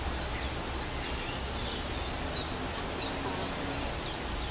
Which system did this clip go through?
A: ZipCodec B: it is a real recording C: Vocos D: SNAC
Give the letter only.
B